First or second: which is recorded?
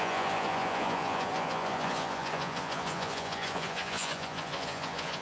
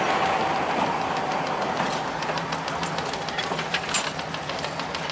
second